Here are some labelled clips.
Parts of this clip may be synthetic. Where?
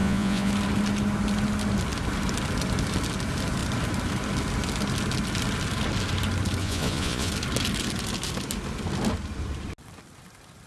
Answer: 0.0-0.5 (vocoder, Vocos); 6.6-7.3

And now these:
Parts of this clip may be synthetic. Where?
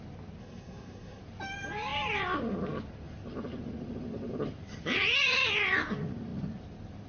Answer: 0.4-1.2 (codec, SNAC)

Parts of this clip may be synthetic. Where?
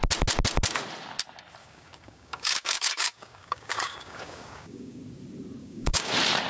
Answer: 1.6-5.0 (codec, DAC); 5.6-6.1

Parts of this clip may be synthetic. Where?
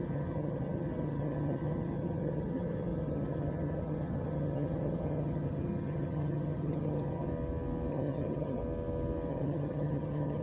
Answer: 0.0-7.3 (vocoder, HiFi-GAN); 7.9-8.6; 9.3-10.4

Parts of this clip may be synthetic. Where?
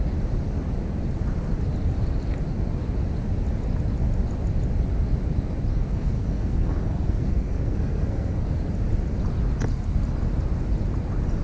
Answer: 5.7-8.6 (codec, SNAC)